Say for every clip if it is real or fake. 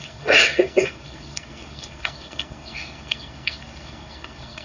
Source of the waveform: fake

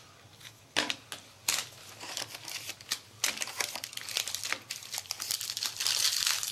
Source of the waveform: real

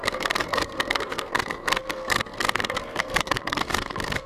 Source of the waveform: fake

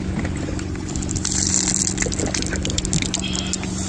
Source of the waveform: real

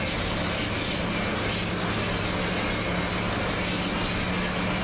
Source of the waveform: real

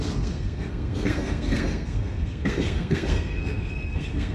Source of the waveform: fake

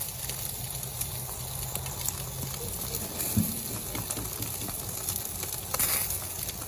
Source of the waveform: real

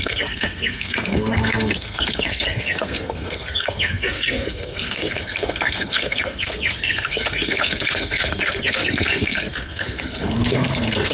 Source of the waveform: fake